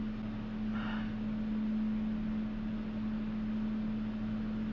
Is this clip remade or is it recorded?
recorded